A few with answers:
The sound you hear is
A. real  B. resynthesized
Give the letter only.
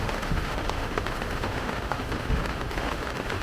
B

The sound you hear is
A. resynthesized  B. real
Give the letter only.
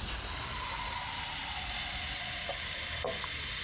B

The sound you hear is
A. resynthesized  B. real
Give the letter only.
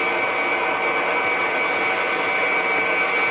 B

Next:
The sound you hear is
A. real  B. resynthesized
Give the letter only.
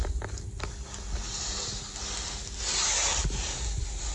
A